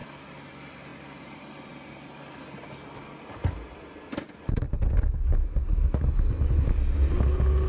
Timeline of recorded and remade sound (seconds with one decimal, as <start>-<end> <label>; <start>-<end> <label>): 0.0-7.7 recorded